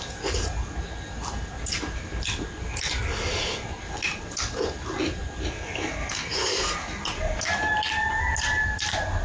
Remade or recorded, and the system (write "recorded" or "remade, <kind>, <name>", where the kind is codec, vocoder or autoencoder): recorded